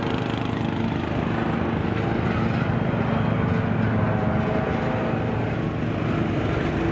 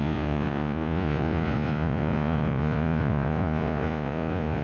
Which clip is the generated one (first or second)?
second